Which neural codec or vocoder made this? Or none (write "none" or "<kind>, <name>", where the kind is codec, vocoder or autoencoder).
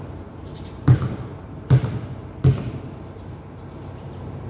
none